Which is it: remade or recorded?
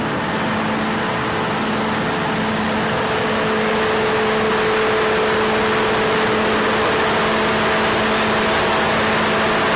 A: recorded